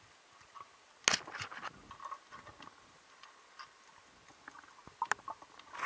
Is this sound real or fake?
real